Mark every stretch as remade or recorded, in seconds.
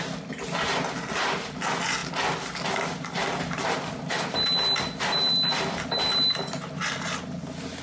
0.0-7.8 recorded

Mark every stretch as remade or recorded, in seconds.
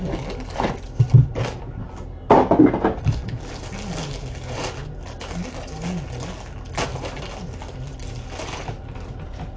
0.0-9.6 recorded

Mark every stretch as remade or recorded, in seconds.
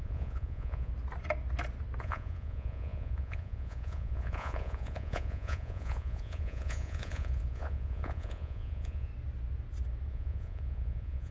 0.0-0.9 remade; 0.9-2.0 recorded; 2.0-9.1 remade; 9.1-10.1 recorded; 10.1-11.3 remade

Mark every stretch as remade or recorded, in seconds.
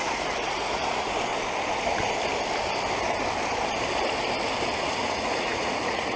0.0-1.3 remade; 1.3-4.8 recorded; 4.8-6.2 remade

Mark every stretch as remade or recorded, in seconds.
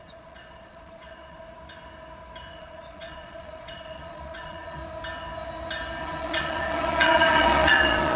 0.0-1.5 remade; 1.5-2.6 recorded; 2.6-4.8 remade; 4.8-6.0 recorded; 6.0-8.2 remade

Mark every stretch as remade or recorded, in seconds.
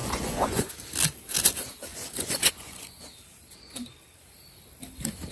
0.0-0.7 remade; 0.7-1.9 recorded; 1.9-3.0 remade; 3.0-5.3 recorded